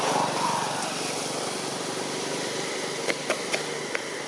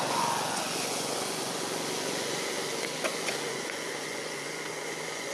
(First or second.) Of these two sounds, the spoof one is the second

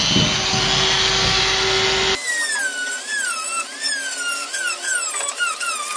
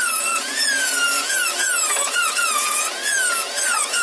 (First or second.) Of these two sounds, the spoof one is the second